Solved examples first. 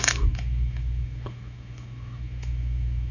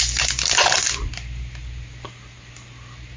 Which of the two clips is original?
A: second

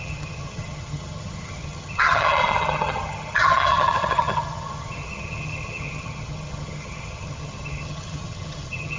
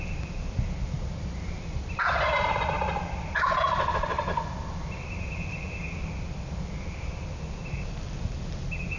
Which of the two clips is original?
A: second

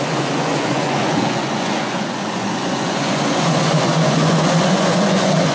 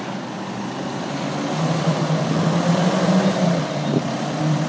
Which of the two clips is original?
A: second